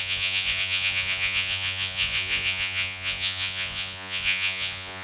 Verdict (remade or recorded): remade